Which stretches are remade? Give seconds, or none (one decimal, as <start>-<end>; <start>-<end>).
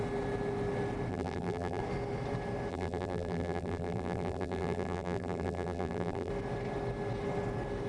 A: 1.1-1.8; 2.7-6.3